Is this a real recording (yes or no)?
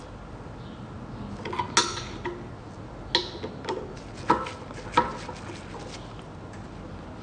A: yes